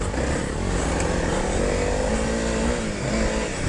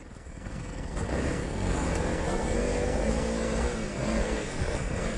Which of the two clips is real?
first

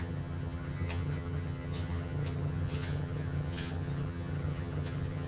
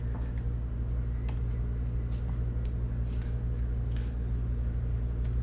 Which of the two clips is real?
second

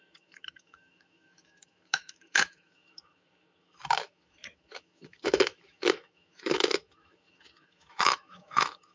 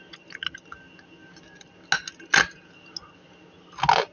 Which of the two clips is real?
second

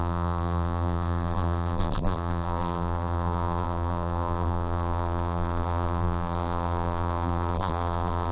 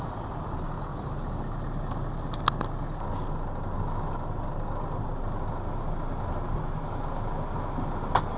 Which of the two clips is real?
second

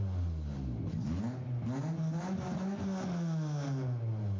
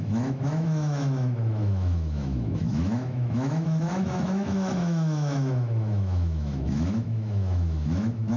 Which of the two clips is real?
first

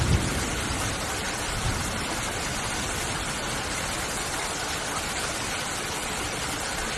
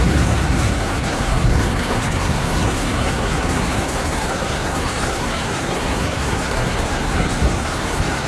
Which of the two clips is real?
first